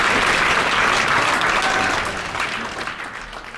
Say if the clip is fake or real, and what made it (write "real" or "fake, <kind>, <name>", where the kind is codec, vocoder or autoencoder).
real